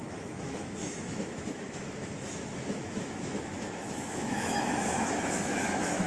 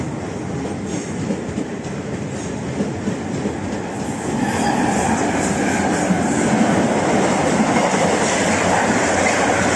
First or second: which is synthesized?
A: first